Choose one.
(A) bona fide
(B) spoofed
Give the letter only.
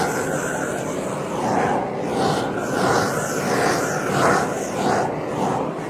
A